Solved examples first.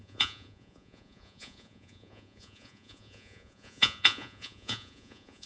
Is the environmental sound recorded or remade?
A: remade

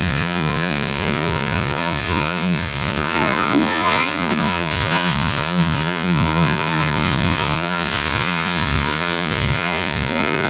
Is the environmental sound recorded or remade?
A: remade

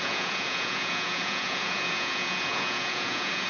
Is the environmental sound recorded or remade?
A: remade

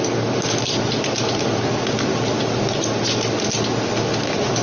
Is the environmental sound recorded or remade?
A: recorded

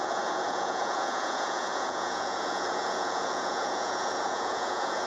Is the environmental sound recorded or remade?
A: remade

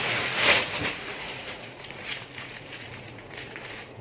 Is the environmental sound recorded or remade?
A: remade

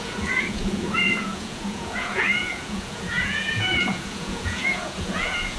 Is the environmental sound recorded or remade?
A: remade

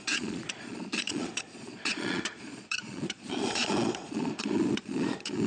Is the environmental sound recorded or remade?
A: remade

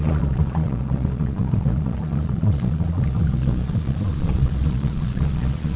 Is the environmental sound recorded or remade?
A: remade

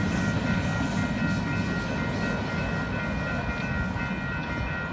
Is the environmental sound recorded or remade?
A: recorded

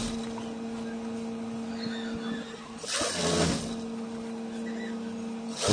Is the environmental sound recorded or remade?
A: recorded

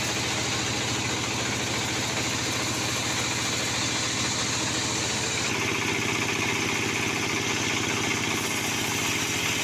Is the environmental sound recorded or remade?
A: recorded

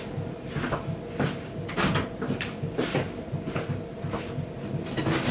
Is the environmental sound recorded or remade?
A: recorded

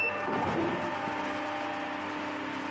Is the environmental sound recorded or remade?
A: recorded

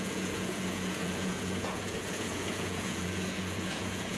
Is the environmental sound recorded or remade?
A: remade